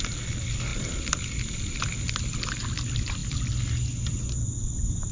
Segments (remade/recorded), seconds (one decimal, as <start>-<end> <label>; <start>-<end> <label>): 0.0-5.1 recorded